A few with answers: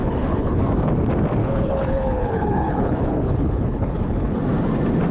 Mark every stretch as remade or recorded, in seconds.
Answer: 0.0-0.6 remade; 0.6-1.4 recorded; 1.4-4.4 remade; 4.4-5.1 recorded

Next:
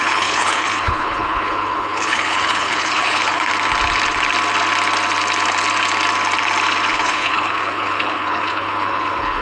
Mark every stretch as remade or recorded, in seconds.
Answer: 0.0-3.5 remade; 3.5-6.9 recorded; 6.9-9.4 remade